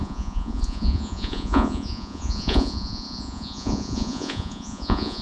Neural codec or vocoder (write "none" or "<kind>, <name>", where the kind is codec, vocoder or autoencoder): vocoder, Vocos